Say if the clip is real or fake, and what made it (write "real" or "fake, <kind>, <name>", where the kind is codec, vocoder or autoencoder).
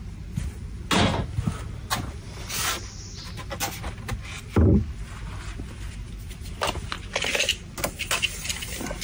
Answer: real